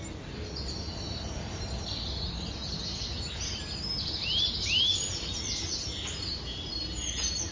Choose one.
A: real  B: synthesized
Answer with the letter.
A